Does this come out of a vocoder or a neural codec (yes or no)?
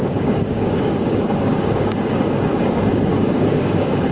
yes